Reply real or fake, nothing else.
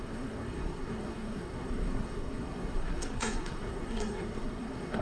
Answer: fake